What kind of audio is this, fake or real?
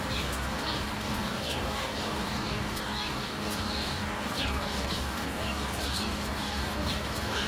fake